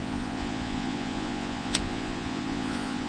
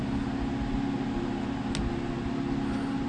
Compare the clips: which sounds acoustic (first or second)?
second